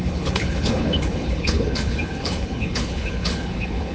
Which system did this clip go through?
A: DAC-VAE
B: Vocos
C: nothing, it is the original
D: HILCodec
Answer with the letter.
D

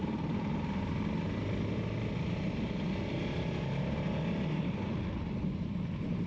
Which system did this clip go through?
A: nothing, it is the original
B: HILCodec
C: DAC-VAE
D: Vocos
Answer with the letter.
A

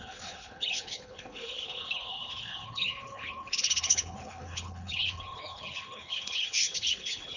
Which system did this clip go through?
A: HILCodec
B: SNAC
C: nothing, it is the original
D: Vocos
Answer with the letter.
A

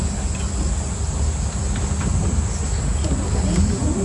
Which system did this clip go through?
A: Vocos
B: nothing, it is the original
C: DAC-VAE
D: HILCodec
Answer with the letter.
B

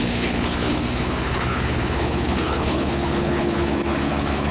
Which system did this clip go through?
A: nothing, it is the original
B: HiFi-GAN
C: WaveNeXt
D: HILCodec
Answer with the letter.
D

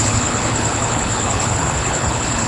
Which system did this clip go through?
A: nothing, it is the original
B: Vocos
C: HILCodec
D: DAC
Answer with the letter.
C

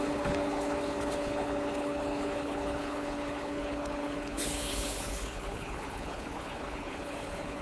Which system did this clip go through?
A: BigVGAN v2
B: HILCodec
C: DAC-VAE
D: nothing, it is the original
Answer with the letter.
B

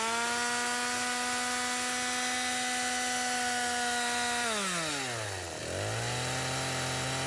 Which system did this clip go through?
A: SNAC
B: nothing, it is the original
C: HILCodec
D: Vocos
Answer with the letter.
B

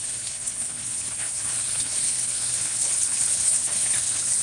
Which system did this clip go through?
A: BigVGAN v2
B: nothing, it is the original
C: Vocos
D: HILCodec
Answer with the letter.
D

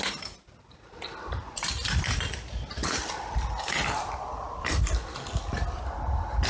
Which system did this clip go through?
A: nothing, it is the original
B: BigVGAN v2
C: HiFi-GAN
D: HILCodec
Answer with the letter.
A